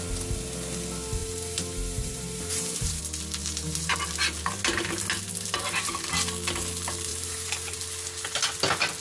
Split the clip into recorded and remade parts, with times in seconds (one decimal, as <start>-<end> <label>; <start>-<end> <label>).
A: 0.0-1.2 recorded; 1.2-3.0 remade; 3.0-3.4 recorded; 3.4-4.0 remade; 4.0-7.1 recorded; 7.1-7.8 remade; 7.8-9.0 recorded